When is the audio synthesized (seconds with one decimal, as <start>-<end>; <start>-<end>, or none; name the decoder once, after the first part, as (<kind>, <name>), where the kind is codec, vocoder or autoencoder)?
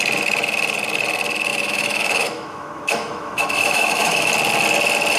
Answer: 1.5-4.3 (autoencoder, DAC-VAE)